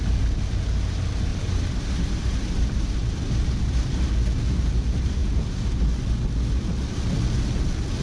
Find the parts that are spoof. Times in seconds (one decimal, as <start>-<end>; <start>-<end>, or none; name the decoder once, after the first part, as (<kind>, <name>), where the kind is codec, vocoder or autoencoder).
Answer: 1.3-4.1 (vocoder, BigVGAN v2); 5.2-5.8